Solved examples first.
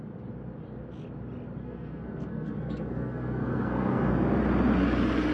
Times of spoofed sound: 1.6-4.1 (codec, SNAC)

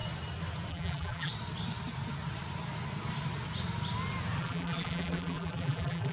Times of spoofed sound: 0.7-1.3 (vocoder, BigVGAN v2); 4.4-6.1

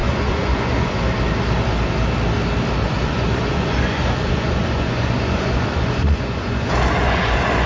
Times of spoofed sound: 0.0-1.0 (vocoder, Vocos); 2.8-7.7

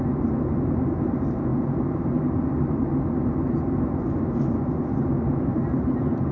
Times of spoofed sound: 5.5-6.3 (vocoder, BigVGAN v2)

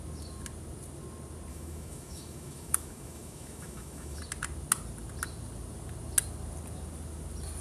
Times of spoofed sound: 1.5-4.2 (autoencoder, DAC-VAE)